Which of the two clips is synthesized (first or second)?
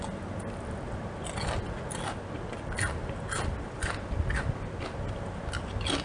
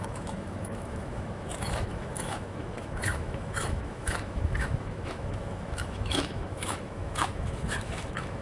second